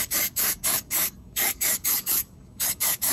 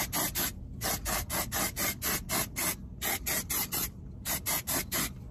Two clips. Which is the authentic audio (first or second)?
second